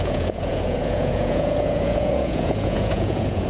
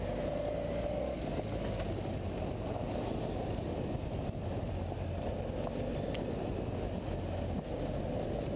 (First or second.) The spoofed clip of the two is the first